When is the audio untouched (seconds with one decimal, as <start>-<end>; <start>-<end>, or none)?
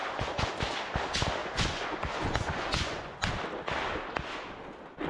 0.5-1.4; 3.3-5.1